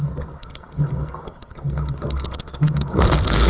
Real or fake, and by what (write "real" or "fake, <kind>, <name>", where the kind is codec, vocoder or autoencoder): fake, codec, SNAC